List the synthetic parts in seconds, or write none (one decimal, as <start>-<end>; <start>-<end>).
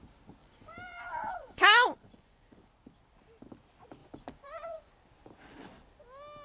0.4-2.7; 4.0-4.9